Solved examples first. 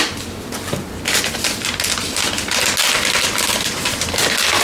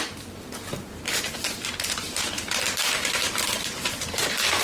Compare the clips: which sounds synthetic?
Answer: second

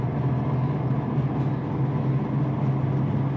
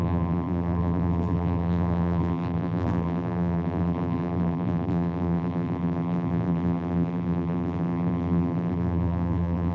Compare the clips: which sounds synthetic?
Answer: second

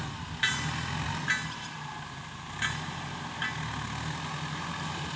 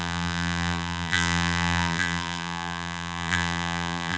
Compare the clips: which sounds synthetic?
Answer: second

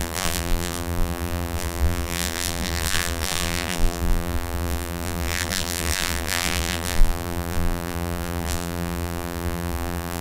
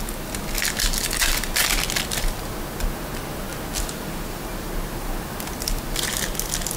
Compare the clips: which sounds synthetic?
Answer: first